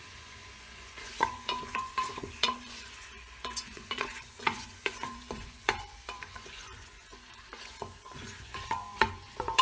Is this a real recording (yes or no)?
no